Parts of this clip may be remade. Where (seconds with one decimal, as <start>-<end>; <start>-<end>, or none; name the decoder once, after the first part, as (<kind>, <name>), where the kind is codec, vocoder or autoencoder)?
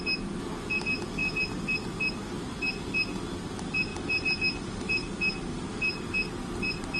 none